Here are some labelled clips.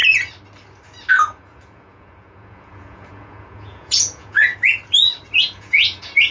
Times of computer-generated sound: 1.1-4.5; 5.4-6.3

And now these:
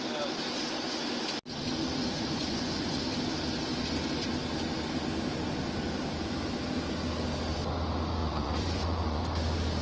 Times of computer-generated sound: 2.0-3.0; 8.2-9.2

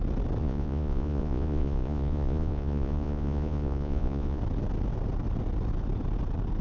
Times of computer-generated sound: 0.4-4.4

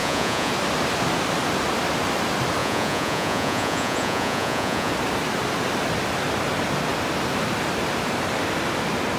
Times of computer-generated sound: 0.0-0.5; 2.6-4.9

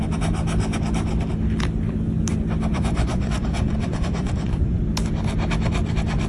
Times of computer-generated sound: 2.7-4.8

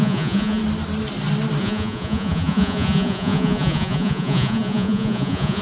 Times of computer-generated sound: 0.0-0.6; 1.6-5.6